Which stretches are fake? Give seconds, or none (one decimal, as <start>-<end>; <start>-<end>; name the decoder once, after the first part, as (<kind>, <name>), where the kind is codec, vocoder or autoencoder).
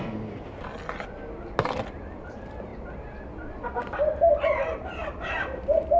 5.0-6.0 (vocoder, BigVGAN v2)